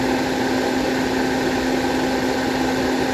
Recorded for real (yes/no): yes